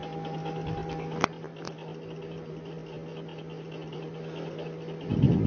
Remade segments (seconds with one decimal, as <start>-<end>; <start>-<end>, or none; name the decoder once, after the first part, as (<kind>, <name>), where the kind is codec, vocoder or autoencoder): none